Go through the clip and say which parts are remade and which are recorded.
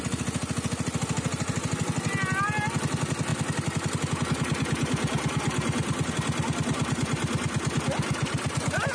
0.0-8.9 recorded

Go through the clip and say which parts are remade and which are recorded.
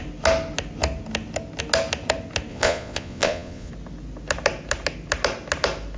0.0-2.5 recorded; 2.5-3.7 remade; 3.7-6.0 recorded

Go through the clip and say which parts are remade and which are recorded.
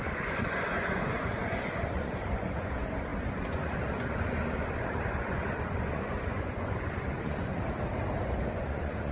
0.0-7.5 remade; 7.5-8.5 recorded; 8.5-9.1 remade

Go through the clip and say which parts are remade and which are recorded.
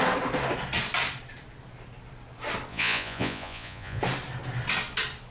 0.0-2.7 recorded; 2.7-4.0 remade; 4.0-5.3 recorded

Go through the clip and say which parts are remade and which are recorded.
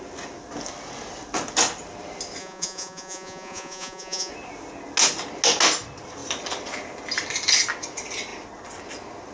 0.0-2.4 recorded; 2.4-4.3 remade; 4.3-9.3 recorded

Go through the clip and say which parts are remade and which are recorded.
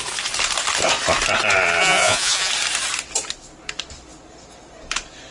0.0-1.8 recorded; 1.8-2.5 remade; 2.5-5.3 recorded